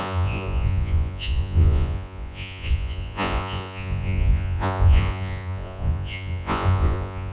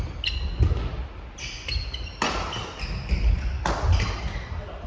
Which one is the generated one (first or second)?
first